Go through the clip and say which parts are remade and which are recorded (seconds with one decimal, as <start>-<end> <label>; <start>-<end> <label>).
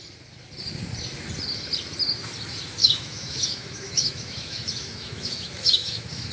0.0-2.8 recorded; 2.8-6.3 remade